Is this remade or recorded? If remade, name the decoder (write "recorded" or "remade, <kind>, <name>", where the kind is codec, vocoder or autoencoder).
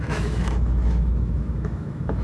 remade, autoencoder, DAC-VAE